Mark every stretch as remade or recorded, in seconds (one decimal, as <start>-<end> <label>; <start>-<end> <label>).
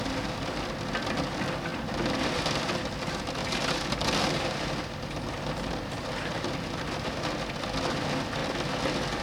0.0-1.7 recorded; 1.7-2.4 remade; 2.4-3.4 recorded; 3.4-7.1 remade; 7.1-9.2 recorded